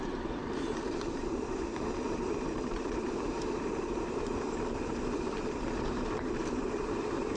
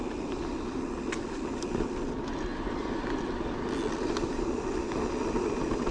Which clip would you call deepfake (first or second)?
first